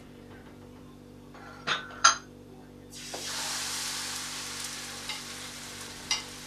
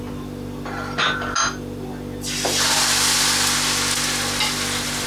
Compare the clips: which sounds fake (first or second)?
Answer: first